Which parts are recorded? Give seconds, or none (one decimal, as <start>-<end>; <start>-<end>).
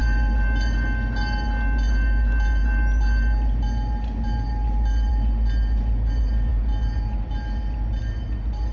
0.0-8.7